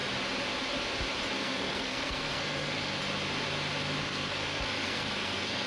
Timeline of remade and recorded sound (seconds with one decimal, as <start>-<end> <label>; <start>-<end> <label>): 0.0-1.3 recorded; 1.3-3.0 remade; 3.0-4.0 recorded; 4.0-5.7 remade